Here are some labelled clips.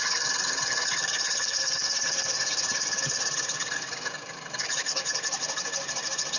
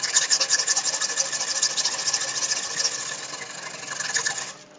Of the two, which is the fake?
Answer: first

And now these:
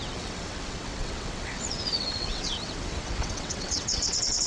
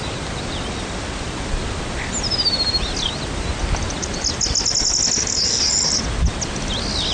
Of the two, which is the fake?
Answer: first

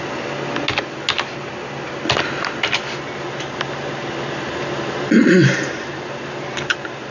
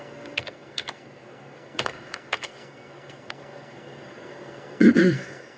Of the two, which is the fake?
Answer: second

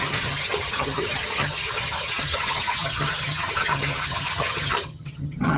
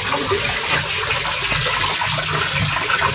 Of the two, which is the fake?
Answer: first